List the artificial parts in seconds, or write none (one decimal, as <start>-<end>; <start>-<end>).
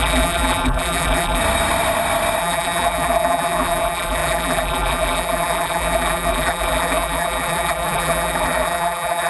0.0-1.4; 2.4-9.3